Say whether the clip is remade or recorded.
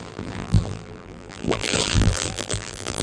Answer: remade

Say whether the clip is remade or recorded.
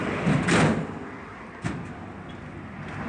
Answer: recorded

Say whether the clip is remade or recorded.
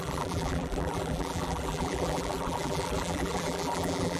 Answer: remade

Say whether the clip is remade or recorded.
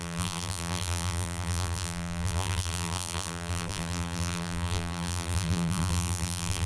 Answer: remade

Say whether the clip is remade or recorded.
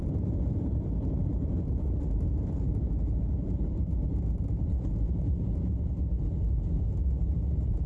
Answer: remade